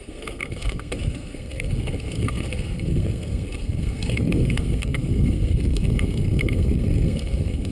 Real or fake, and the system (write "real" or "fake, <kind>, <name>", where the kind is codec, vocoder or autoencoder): fake, codec, SNAC